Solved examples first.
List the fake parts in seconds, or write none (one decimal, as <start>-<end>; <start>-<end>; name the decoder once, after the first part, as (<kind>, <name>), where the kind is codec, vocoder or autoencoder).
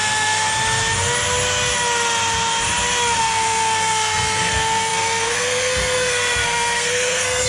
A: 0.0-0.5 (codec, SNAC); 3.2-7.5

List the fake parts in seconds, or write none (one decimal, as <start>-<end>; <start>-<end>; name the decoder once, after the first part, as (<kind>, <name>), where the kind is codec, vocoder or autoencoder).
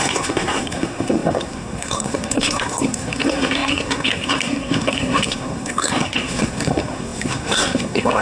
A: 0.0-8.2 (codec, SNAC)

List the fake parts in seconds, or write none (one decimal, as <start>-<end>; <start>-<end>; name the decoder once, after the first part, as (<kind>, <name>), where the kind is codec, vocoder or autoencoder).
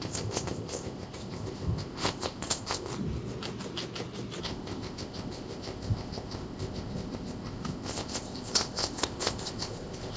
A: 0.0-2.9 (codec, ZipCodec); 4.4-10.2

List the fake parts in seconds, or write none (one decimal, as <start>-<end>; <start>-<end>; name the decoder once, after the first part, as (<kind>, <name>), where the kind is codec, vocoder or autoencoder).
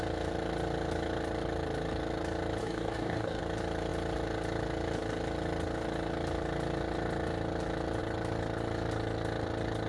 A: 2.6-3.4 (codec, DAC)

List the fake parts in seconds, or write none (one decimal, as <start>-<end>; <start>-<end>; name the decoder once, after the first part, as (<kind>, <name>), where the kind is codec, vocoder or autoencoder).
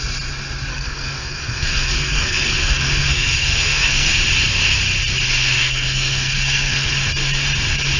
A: 0.7-4.1 (codec, SNAC); 5.6-6.9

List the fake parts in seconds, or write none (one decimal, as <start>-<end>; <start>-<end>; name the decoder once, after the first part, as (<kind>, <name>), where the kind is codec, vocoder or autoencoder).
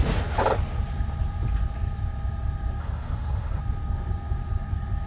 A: 2.8-3.6 (codec, SNAC)